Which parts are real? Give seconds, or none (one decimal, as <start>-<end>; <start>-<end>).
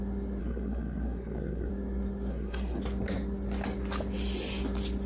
0.0-0.4; 1.7-2.3; 2.8-5.1